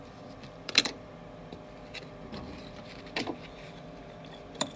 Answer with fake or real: fake